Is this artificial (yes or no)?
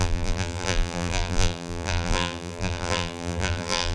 yes